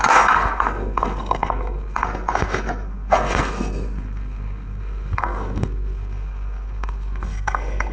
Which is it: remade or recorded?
remade